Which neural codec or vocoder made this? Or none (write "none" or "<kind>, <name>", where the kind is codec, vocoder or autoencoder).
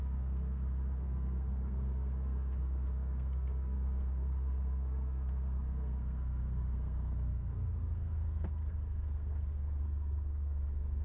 codec, SNAC